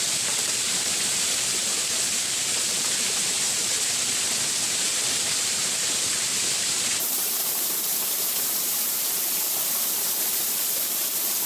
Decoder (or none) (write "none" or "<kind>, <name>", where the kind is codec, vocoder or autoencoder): vocoder, BigVGAN v2